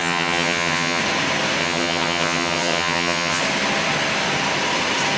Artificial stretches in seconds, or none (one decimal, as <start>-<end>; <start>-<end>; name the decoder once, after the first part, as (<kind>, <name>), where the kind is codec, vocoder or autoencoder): 0.0-1.0 (vocoder, HiFi-GAN); 1.6-3.4